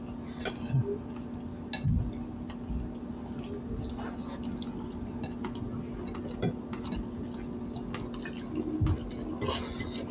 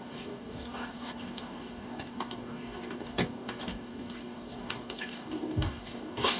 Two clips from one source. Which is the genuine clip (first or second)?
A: first